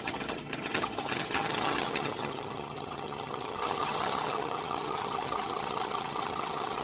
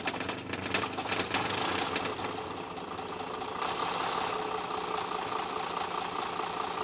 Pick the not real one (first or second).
first